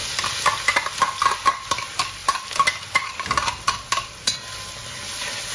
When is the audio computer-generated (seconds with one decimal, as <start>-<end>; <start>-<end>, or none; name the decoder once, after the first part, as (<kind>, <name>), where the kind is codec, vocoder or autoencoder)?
0.9-5.5 (vocoder, BigVGAN v2)